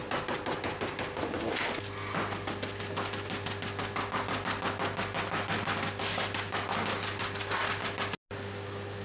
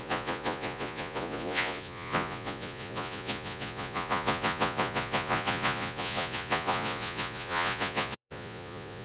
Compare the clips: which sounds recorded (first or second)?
first